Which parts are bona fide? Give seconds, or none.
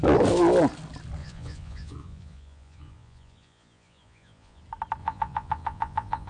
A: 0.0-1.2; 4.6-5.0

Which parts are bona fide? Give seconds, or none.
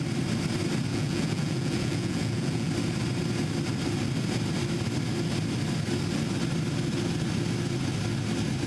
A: 0.0-0.9; 2.7-8.7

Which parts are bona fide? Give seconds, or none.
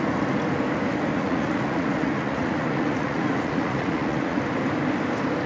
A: 0.0-1.1; 4.4-5.5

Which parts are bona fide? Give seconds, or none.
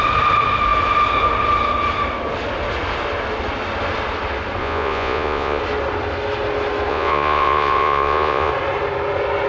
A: 0.0-4.6; 5.6-6.9; 8.5-9.5